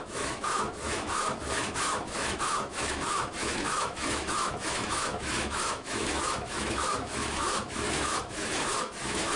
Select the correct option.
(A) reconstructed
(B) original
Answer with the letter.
A